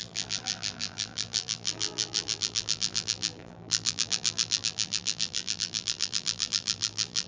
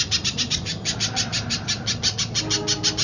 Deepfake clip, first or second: first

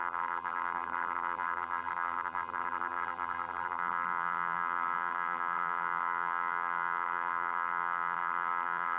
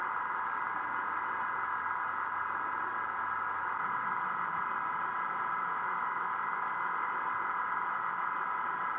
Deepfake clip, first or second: first